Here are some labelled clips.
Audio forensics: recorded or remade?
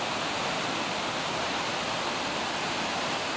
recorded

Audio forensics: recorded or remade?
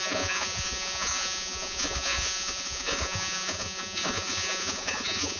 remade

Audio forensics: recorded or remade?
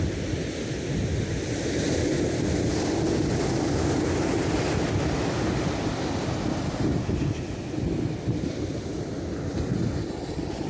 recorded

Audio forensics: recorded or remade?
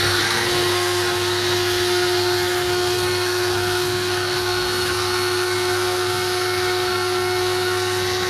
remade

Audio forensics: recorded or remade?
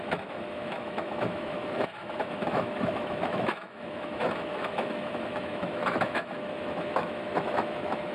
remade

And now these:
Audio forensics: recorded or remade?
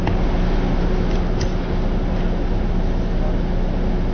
recorded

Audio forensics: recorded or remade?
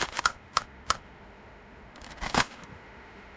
remade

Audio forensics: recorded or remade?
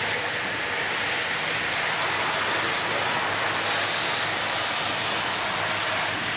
recorded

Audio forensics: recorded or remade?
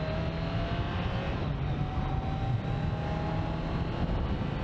recorded